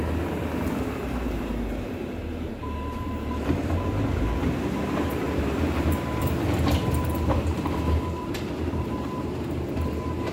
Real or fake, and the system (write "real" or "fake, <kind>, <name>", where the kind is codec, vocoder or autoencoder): fake, vocoder, BigVGAN v2